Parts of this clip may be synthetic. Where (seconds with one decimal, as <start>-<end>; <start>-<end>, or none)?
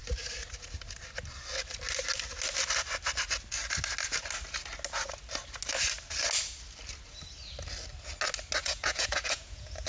8.6-9.9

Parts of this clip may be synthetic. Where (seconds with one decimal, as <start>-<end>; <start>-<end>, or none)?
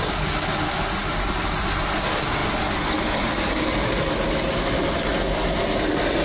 none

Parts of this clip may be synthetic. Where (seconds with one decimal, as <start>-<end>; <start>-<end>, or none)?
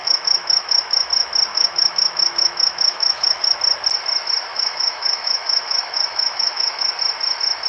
0.0-1.1; 1.5-3.6; 4.5-6.9